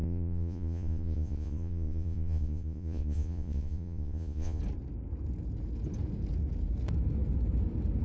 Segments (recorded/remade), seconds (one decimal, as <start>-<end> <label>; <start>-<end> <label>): 0.0-4.6 remade; 4.6-8.0 recorded